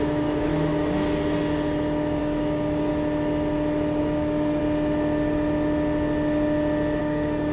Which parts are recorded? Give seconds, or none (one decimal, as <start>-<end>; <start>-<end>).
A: 0.5-2.2; 2.9-4.0; 4.6-7.0